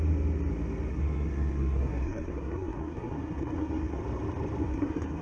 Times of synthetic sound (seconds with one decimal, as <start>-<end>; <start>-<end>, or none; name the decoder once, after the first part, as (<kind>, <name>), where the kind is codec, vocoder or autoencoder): 0.9-4.0 (codec, SNAC); 4.6-5.2